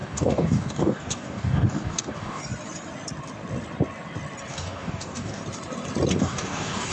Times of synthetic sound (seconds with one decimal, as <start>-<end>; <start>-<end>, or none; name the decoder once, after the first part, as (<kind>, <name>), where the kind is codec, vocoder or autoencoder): 0.0-2.4 (codec, DAC); 4.5-5.4; 6.1-6.9

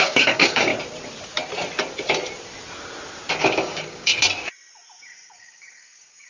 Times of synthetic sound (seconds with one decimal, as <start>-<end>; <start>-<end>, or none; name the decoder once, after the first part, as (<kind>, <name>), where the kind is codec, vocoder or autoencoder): 0.0-0.7 (codec, DAC); 3.4-4.1; 5.0-6.3

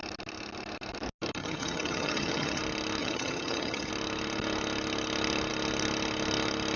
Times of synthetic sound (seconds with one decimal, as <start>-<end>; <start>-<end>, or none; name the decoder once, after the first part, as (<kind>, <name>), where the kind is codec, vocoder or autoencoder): 1.4-2.6 (vocoder, HiFi-GAN); 3.0-3.9

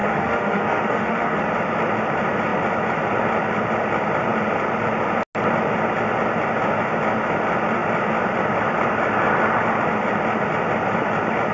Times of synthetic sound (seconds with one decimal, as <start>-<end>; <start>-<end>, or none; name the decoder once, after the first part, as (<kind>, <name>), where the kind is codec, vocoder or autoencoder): 0.0-1.4 (autoencoder, DAC-VAE)

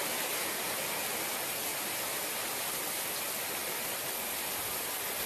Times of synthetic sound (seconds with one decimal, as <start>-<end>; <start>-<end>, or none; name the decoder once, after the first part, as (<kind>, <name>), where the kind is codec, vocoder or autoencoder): none

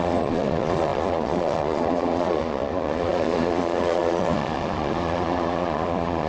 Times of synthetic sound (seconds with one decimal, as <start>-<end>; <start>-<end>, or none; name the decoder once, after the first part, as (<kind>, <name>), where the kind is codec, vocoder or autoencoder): 0.0-6.3 (vocoder, Vocos)

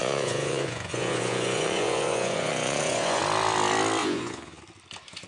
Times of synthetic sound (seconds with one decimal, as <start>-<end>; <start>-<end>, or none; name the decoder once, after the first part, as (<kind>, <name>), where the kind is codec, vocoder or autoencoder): 0.0-3.2 (vocoder, Vocos); 4.0-4.6